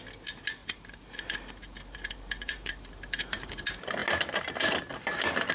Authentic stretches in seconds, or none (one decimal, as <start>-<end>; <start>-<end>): 0.0-0.6; 3.5-5.5